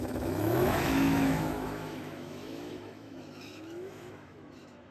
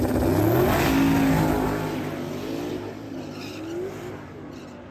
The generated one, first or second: first